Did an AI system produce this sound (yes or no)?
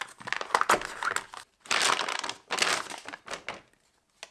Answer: no